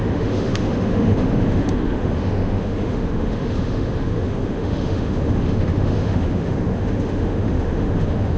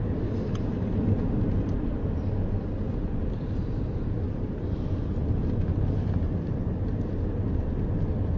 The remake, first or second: first